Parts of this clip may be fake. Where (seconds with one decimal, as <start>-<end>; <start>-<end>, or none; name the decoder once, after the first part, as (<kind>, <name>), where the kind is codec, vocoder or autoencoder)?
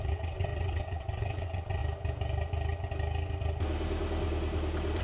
0.0-1.8 (vocoder, WaveNeXt)